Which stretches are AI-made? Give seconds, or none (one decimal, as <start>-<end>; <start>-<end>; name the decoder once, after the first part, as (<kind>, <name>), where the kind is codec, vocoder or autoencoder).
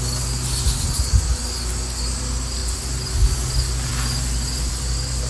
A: none